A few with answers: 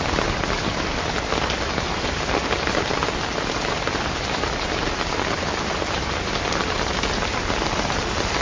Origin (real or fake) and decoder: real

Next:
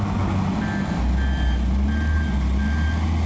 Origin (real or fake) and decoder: real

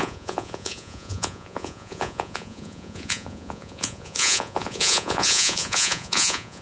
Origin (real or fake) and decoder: fake, vocoder, Vocos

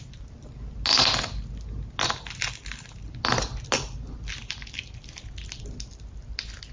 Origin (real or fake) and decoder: real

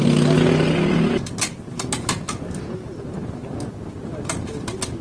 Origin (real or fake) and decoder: real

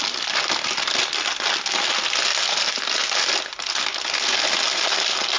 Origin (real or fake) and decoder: real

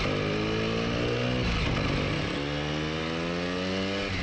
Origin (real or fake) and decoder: real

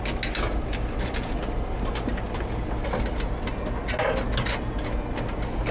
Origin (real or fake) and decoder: real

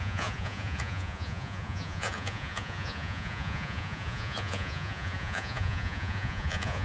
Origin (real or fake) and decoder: fake, vocoder, Vocos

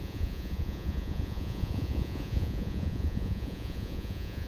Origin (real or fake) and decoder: fake, vocoder, Vocos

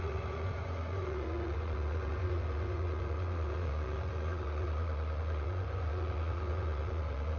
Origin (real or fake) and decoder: fake, vocoder, Vocos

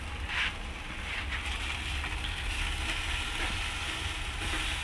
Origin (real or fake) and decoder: real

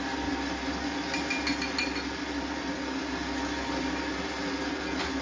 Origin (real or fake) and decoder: real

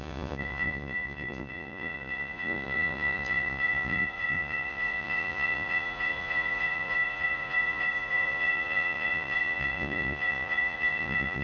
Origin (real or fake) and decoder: fake, vocoder, Vocos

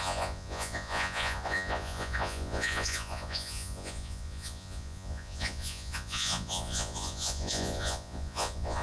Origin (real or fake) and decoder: fake, vocoder, Vocos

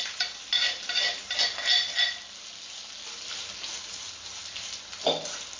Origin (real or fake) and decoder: real